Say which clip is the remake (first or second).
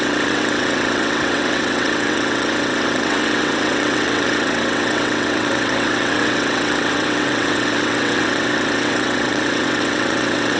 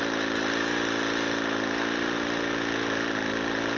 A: first